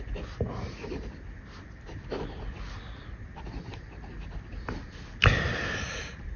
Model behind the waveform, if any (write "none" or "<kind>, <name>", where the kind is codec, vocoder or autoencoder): none